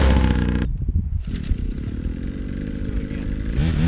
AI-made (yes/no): no